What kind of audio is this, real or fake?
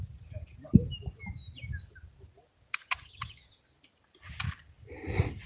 real